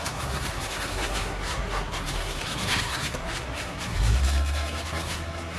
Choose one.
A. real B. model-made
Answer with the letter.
B